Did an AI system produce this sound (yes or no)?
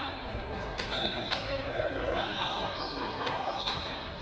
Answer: yes